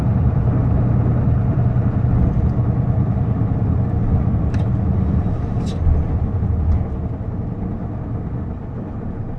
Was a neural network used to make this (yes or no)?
no